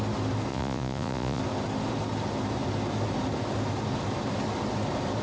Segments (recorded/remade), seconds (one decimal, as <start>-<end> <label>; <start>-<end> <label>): 0.0-0.5 recorded; 0.5-1.4 remade; 1.4-5.2 recorded